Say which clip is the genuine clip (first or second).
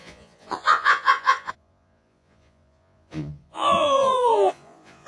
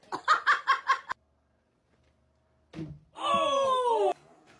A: second